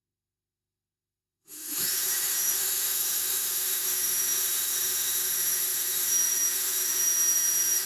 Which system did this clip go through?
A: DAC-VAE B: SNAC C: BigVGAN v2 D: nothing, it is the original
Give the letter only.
A